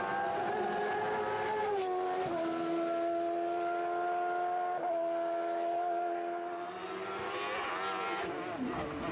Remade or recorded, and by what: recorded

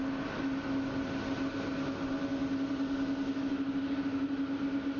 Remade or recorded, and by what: recorded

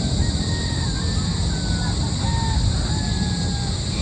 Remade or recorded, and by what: recorded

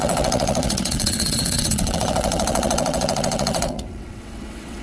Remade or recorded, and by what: remade, vocoder, WaveNeXt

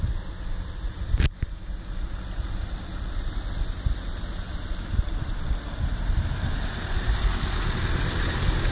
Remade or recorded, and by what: recorded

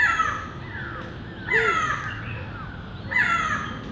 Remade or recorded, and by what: recorded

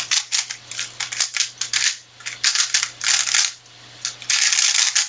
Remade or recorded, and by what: recorded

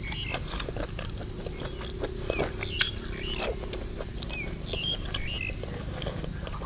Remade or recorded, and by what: recorded